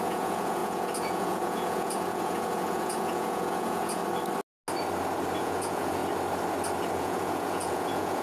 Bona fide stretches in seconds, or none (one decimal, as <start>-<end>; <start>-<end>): 4.0-5.4; 6.0-6.9

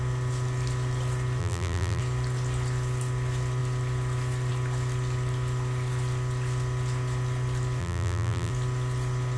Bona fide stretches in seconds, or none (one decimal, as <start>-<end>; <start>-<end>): 0.0-1.4; 2.0-7.8; 8.5-9.4

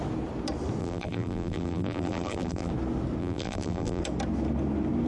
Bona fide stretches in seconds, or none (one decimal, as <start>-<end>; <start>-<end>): 0.0-0.8; 2.7-3.2; 4.0-5.1

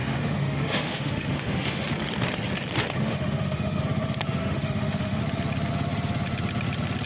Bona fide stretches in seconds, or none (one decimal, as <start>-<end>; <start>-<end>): 1.9-3.0; 3.8-4.4; 5.2-7.1

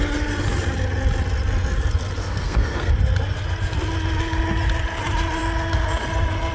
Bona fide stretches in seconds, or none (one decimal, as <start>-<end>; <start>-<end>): 0.0-2.2; 2.9-6.5